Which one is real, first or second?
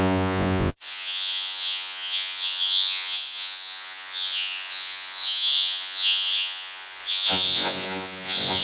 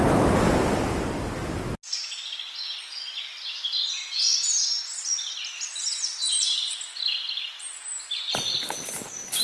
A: second